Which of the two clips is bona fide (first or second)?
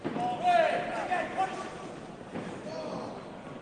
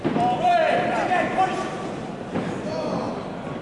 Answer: first